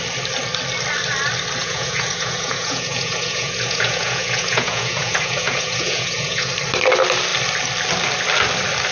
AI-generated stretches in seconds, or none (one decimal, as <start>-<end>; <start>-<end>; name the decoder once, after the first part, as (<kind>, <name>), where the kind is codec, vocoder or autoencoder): 1.6-6.5 (vocoder, Vocos)

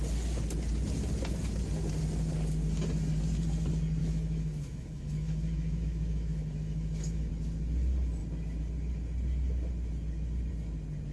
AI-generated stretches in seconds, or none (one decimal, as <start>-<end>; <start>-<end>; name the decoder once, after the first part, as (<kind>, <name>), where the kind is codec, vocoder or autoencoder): 4.0-7.3 (autoencoder, DAC-VAE)

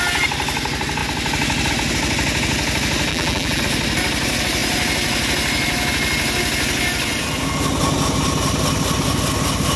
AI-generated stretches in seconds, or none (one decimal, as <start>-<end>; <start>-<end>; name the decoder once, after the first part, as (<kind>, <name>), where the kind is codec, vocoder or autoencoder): 3.1-3.6 (vocoder, BigVGAN v2)

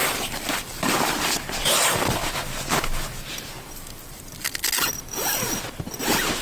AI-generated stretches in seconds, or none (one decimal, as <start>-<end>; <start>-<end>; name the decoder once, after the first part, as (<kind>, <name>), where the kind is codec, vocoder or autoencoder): 0.0-0.9 (vocoder, BigVGAN v2); 1.6-4.5